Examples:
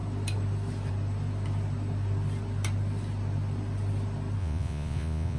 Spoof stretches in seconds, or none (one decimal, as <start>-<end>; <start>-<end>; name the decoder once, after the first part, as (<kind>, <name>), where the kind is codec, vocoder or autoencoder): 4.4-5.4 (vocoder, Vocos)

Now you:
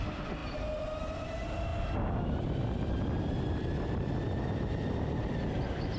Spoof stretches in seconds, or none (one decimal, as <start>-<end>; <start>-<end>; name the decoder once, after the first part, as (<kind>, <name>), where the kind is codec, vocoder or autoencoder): none

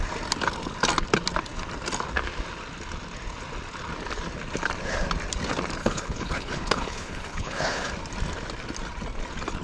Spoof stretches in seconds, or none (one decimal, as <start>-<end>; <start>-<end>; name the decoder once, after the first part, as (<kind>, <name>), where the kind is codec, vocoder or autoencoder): 5.8-7.9 (codec, HILCodec)

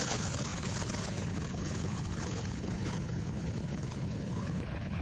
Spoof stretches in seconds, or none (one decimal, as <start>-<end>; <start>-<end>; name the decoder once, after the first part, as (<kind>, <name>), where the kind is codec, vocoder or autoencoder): 0.0-5.0 (codec, HILCodec)